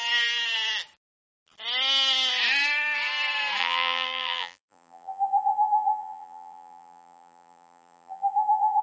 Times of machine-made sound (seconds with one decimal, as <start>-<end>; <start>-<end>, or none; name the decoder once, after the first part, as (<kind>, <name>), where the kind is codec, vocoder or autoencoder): 3.6-8.8 (vocoder, BigVGAN v2)